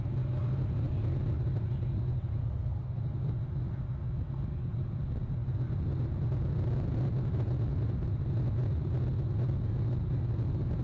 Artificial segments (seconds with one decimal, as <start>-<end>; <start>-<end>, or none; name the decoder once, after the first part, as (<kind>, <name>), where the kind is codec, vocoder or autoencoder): 2.4-3.0 (codec, SNAC)